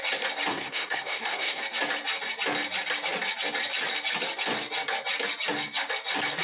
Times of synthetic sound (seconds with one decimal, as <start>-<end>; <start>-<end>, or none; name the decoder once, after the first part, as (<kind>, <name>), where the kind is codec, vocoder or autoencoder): 0.5-1.6 (codec, SNAC)